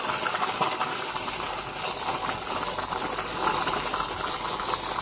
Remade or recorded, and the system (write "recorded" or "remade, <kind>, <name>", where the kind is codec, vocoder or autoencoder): recorded